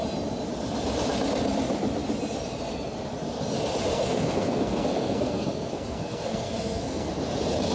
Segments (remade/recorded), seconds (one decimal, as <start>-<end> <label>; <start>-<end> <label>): 0.0-3.9 recorded; 3.9-7.1 remade; 7.1-7.7 recorded